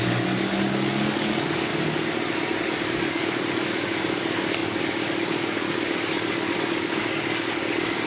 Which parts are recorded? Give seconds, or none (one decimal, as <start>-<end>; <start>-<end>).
1.7-2.6